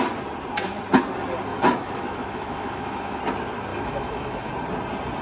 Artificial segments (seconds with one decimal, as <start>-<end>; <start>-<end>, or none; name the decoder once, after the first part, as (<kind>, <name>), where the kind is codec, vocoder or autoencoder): 1.5-3.2 (autoencoder, DAC-VAE); 3.7-4.5